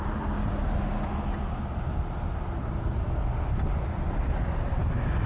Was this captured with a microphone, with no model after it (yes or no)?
yes